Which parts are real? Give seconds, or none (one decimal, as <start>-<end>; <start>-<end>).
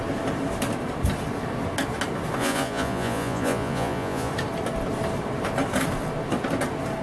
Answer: 0.0-2.4; 4.3-7.0